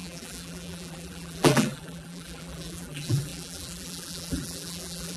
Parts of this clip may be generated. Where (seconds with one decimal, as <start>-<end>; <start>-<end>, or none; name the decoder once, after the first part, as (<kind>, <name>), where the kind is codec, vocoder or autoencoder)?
0.0-5.2 (vocoder, BigVGAN v2)